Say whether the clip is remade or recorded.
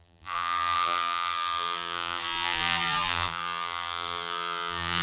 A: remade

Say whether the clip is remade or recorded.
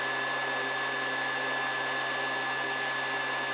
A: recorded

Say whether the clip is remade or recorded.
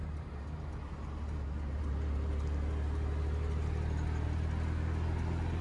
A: recorded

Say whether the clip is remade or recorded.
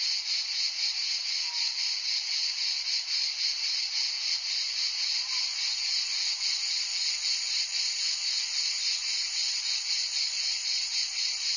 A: recorded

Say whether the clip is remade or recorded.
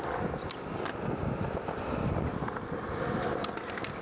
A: recorded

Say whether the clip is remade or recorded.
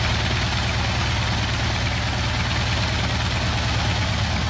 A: recorded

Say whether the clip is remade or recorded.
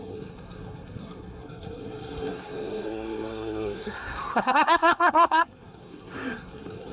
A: remade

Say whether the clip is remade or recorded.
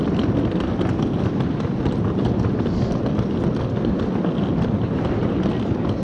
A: recorded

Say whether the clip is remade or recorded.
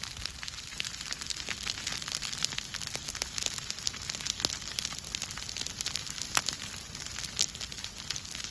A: recorded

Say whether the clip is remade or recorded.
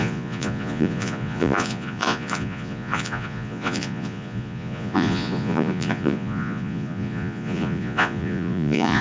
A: remade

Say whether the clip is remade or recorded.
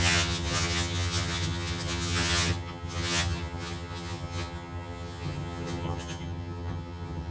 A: remade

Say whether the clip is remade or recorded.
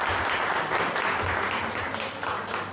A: recorded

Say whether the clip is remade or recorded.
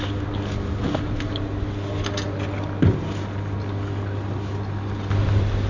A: recorded